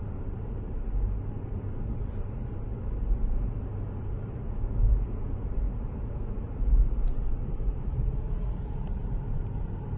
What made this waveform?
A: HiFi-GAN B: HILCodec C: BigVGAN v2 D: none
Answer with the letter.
C